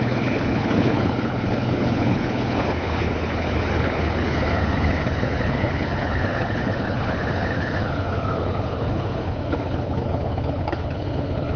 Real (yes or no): no